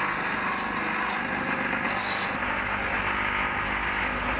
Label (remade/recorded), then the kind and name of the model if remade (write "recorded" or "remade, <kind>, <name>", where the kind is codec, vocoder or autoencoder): recorded